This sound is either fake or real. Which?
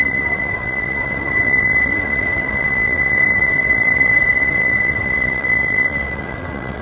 fake